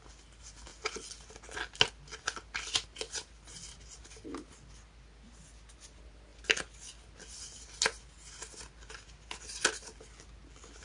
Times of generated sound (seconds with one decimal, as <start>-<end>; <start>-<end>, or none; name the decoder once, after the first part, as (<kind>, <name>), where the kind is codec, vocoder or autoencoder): none